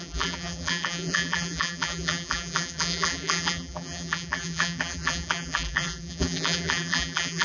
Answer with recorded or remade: remade